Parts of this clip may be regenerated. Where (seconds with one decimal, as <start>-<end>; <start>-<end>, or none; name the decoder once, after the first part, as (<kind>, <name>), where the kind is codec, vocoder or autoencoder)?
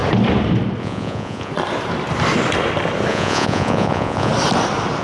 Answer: 0.8-1.5 (vocoder, Vocos); 3.1-4.3